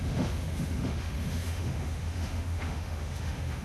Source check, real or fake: fake